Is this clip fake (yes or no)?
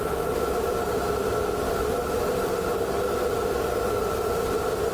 no